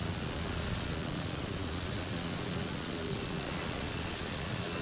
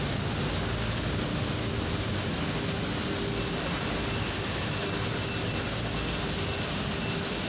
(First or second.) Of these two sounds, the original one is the second